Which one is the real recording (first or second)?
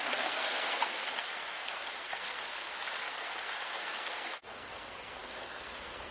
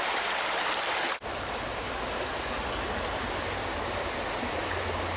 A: second